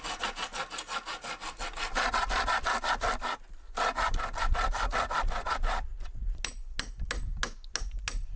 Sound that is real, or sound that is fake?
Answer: real